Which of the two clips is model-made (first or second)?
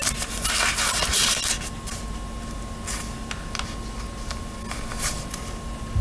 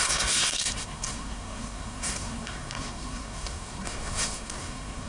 second